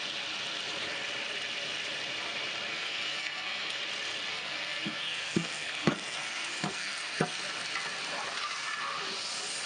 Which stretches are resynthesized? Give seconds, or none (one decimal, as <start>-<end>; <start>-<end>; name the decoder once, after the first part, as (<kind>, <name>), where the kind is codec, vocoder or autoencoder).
2.7-3.8 (codec, SNAC); 4.3-7.4